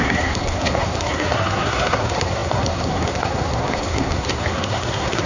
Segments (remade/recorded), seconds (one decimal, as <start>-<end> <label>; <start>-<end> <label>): 0.0-5.3 remade